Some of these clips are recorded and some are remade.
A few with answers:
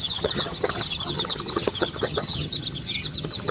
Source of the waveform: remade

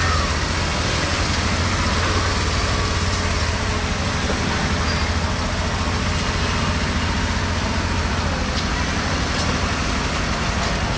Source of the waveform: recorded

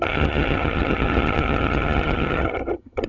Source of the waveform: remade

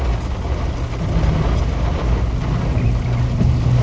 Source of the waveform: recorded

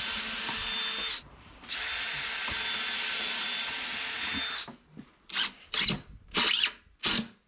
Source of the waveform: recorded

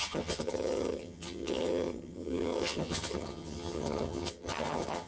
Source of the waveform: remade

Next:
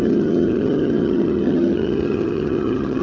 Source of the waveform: remade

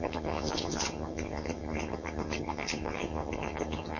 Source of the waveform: remade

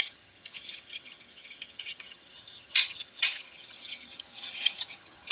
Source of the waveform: remade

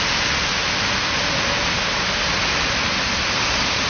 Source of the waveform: recorded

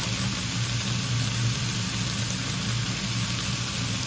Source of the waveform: recorded